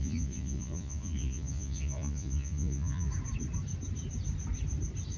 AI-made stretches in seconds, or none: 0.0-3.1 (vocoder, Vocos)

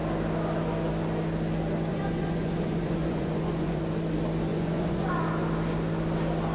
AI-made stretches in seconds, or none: 1.9-3.8 (vocoder, Vocos); 4.5-5.1

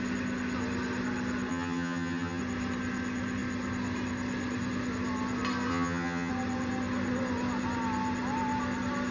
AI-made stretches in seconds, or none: 1.5-2.4 (vocoder, HiFi-GAN); 5.7-6.3